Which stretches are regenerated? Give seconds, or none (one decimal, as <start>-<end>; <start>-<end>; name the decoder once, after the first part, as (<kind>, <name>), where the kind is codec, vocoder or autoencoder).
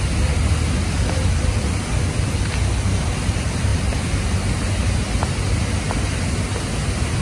none